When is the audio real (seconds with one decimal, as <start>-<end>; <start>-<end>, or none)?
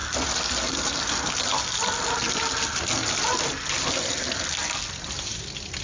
0.0-5.8